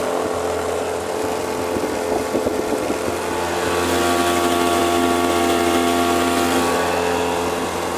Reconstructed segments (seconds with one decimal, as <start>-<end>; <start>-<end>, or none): none